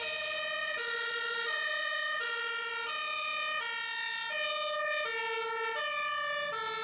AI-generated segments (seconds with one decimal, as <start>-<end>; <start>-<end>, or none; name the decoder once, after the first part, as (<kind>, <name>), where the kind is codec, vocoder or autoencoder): 0.6-2.7 (vocoder, Vocos)